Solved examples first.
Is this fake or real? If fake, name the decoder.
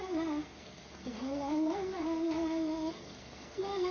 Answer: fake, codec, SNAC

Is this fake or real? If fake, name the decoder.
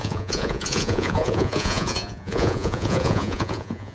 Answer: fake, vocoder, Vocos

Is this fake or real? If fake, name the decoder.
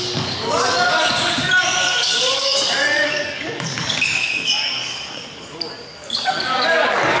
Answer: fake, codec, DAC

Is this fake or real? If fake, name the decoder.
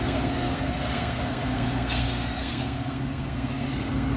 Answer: fake, codec, SNAC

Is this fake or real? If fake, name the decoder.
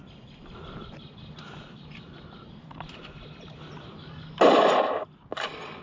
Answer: real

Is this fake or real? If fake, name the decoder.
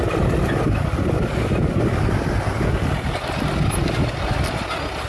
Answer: real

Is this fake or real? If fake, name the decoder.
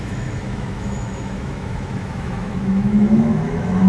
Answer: fake, autoencoder, DAC-VAE